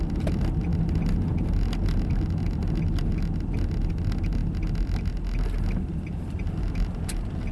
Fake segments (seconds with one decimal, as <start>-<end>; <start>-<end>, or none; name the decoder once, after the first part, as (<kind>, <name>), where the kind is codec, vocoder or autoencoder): none